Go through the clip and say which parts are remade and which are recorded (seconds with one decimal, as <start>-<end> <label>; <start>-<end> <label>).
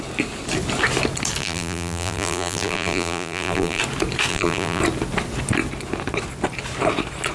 0.0-1.4 recorded; 1.4-3.8 remade; 3.8-4.3 recorded; 4.3-4.8 remade; 4.8-7.3 recorded